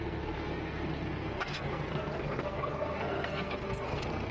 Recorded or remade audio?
remade